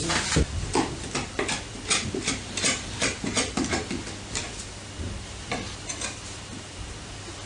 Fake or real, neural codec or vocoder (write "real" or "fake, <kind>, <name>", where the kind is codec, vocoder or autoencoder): fake, vocoder, BigVGAN v2